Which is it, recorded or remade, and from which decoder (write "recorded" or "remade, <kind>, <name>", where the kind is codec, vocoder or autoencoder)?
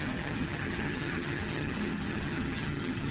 remade, vocoder, HiFi-GAN